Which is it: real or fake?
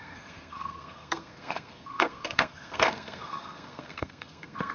fake